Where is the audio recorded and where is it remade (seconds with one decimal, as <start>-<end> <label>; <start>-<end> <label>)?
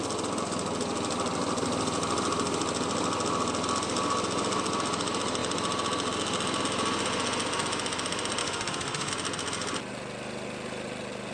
0.0-8.4 recorded; 8.4-9.1 remade; 9.1-11.3 recorded